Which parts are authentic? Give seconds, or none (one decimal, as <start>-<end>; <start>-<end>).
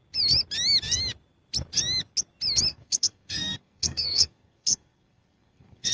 0.0-2.7